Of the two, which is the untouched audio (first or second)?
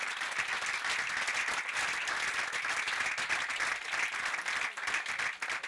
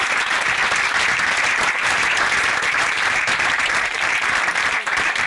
first